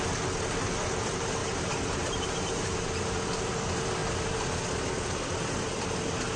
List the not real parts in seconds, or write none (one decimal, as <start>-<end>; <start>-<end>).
1.4-3.0